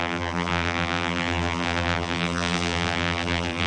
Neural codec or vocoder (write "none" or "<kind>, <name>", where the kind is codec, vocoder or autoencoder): vocoder, BigVGAN v2